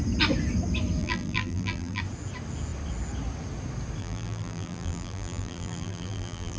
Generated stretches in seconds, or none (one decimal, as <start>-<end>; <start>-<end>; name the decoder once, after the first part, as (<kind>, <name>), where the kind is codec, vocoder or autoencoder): 1.0-2.0 (vocoder, BigVGAN v2); 4.0-6.6

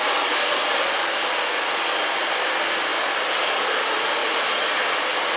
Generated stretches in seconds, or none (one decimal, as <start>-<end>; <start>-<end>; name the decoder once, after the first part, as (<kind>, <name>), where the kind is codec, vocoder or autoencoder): none

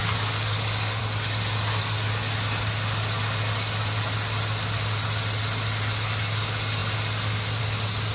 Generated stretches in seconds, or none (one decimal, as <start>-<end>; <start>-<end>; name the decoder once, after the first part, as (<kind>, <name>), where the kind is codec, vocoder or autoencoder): 0.0-1.0 (codec, DAC)

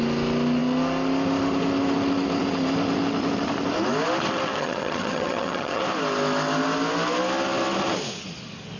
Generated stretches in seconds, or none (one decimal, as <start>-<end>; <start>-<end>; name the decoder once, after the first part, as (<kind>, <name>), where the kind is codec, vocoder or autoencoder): 4.6-5.8 (vocoder, HiFi-GAN)

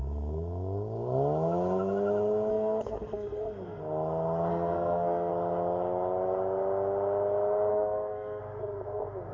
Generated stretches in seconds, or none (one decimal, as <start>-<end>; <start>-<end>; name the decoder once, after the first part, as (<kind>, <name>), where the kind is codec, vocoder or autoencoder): 2.5-3.8 (codec, SNAC); 4.5-5.3; 7.7-8.4

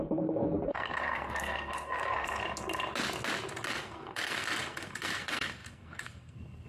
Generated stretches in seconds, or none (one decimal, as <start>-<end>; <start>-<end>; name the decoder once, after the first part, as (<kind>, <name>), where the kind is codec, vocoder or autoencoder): 0.0-2.4 (codec, SNAC); 3.7-6.7

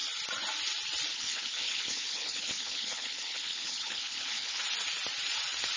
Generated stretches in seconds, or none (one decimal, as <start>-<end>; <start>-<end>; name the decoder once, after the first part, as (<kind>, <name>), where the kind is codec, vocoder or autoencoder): 1.1-4.6 (codec, HILCodec)